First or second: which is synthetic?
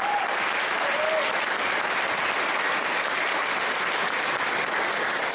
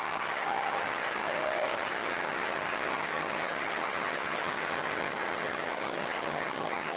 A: second